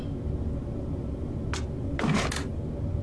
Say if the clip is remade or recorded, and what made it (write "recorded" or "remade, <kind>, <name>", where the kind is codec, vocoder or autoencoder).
recorded